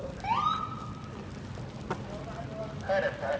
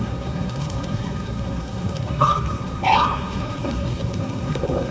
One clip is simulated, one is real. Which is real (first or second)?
first